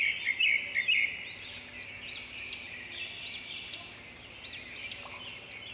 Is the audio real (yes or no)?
yes